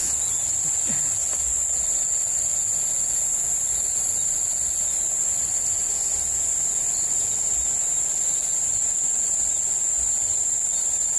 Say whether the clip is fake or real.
real